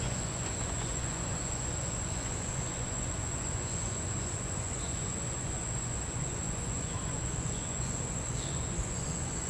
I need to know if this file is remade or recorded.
remade